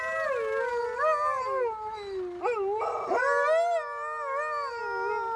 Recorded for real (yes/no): yes